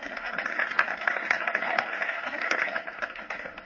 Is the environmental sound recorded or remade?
remade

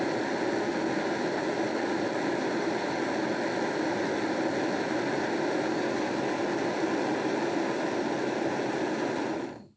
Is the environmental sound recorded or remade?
recorded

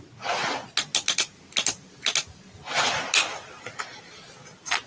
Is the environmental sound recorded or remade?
recorded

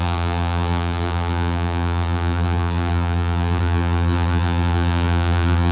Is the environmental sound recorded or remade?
remade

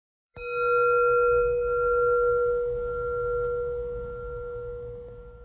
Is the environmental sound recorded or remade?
remade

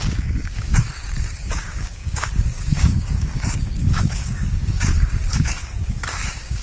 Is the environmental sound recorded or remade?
remade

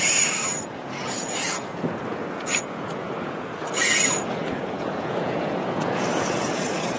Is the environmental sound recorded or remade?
remade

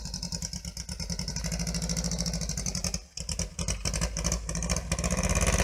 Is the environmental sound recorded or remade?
recorded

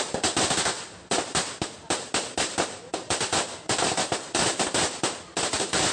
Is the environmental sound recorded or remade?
recorded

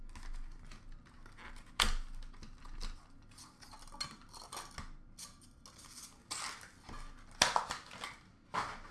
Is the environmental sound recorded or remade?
recorded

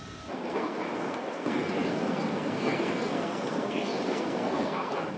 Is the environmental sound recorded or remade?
remade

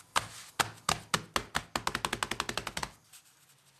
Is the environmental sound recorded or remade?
recorded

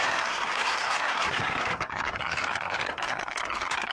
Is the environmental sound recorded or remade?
remade